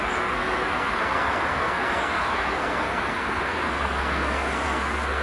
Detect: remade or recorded remade